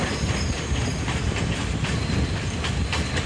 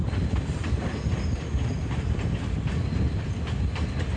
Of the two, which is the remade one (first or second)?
first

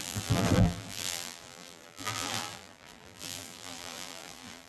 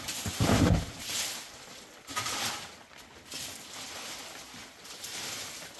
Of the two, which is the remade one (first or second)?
first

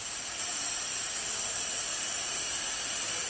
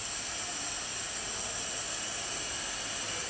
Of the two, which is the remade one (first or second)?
first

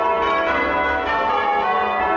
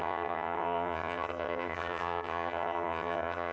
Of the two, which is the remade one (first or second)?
second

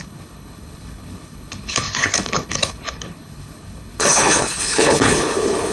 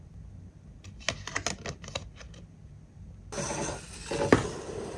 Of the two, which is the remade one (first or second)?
first